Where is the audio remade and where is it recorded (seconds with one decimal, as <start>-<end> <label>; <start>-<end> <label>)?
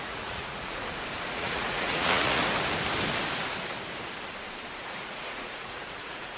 0.0-0.8 remade; 0.8-1.3 recorded; 1.3-2.4 remade; 2.4-4.8 recorded; 4.8-6.4 remade